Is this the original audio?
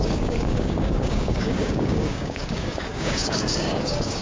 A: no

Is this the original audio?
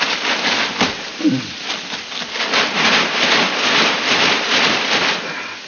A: yes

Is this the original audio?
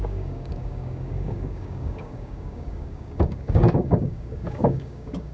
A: no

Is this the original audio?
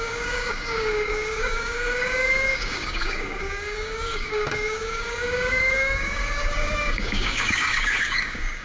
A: no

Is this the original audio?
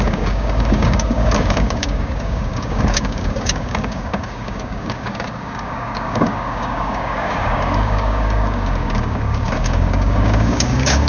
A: no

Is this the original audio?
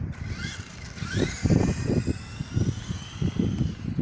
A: yes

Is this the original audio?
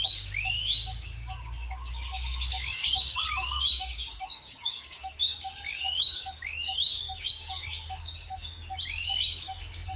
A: no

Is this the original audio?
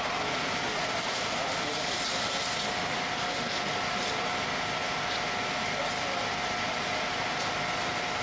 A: yes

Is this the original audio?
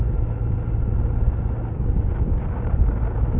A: yes